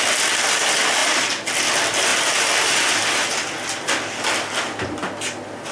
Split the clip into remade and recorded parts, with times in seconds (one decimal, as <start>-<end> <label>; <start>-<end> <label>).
0.0-5.7 recorded